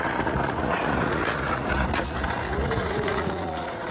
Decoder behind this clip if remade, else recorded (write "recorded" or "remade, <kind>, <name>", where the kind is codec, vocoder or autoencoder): remade, vocoder, Vocos